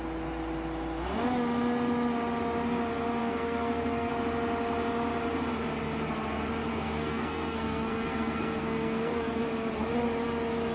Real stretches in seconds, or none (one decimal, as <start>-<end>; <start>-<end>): 0.0-3.2; 4.1-6.7; 9.4-10.7